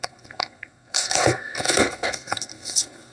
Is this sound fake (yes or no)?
yes